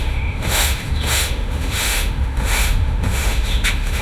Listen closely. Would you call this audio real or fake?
fake